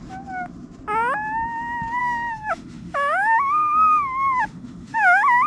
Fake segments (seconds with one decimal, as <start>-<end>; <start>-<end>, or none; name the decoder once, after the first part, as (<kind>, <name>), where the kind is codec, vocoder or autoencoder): 2.0-5.5 (autoencoder, DAC-VAE)